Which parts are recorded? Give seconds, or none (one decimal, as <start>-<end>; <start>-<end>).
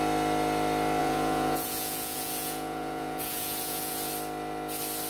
0.0-1.0; 4.1-5.1